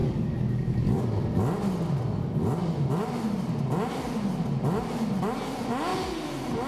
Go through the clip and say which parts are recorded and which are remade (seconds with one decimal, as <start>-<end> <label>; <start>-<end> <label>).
0.0-1.0 remade; 1.0-6.7 recorded